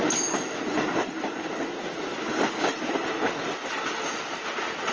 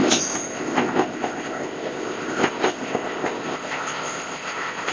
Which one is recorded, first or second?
first